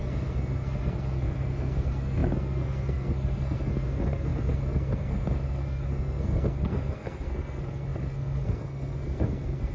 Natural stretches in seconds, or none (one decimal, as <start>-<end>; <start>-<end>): none